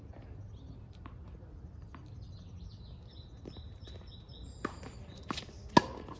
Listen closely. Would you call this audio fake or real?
real